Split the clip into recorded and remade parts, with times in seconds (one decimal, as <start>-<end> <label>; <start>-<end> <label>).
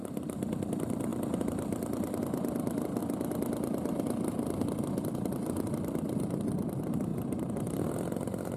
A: 0.0-7.1 recorded; 7.1-7.8 remade; 7.8-8.6 recorded